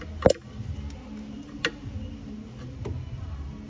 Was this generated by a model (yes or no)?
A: no